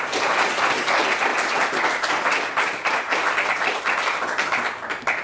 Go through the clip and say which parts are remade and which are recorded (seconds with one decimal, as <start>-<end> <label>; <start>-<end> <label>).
0.0-5.2 recorded